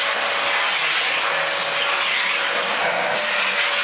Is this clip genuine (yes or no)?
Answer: yes